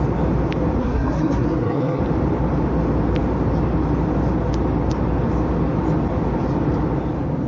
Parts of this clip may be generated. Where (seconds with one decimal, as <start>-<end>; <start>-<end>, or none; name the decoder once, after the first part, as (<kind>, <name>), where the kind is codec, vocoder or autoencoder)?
0.8-2.0 (codec, SNAC)